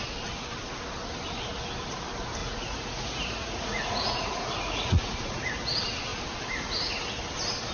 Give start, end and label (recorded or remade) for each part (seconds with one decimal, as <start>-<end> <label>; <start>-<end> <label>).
0.0-2.4 recorded; 2.4-5.4 remade; 5.4-7.7 recorded

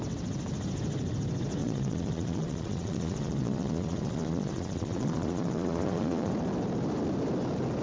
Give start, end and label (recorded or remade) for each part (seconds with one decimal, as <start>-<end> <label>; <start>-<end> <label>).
0.0-1.6 recorded; 1.6-6.3 remade; 6.3-7.8 recorded

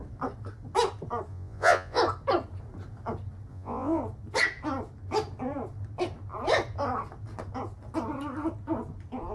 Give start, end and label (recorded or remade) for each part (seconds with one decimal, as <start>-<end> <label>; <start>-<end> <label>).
0.0-1.3 recorded; 1.3-2.0 remade; 2.0-3.5 recorded; 3.5-4.0 remade; 4.0-9.3 recorded

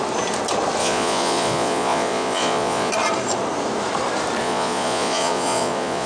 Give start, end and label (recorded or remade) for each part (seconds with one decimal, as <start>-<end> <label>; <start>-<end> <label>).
0.0-0.8 recorded; 0.8-2.9 remade; 2.9-4.4 recorded; 4.4-6.1 remade

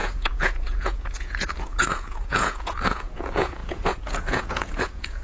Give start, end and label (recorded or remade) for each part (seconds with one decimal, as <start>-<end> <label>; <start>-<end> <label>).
0.0-5.2 remade

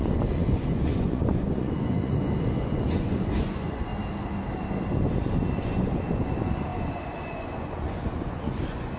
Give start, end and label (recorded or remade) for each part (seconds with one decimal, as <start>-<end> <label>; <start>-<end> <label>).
0.0-3.9 remade; 3.9-5.5 recorded; 5.5-9.0 remade

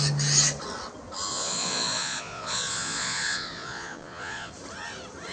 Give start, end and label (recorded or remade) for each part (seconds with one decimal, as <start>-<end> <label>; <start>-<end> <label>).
0.0-1.3 recorded; 1.3-4.5 remade; 4.5-5.3 recorded